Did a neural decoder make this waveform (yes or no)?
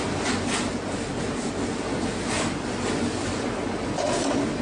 no